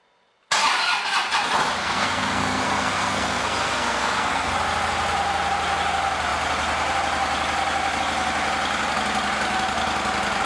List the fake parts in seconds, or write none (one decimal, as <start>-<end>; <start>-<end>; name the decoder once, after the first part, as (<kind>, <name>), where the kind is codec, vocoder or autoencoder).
1.8-4.5 (codec, SNAC)